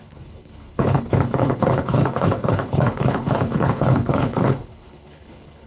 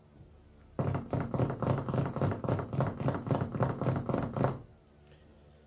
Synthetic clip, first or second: first